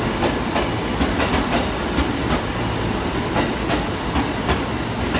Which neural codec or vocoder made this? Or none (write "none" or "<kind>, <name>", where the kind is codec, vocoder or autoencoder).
none